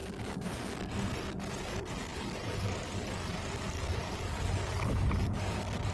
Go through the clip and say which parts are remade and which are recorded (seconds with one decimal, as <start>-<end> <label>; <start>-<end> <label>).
0.0-5.9 recorded